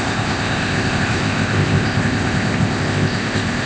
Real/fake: fake